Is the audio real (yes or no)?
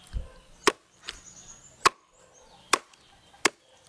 yes